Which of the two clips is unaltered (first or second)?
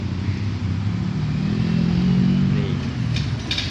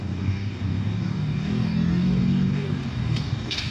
first